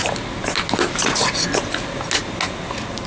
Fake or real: real